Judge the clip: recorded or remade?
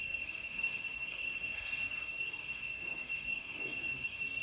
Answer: remade